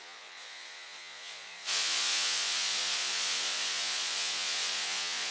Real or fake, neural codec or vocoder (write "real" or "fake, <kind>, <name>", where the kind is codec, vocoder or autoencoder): fake, vocoder, Vocos